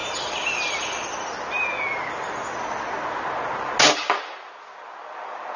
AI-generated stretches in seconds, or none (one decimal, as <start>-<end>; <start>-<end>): none